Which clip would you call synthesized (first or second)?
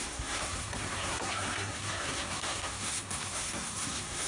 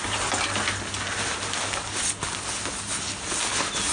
first